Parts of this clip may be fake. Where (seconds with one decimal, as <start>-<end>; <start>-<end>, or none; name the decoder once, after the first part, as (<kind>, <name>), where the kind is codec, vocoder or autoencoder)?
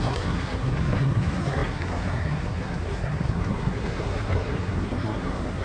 0.0-5.6 (codec, SNAC)